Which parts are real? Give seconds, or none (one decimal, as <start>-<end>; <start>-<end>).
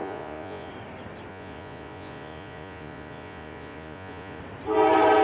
0.7-1.3; 4.4-5.2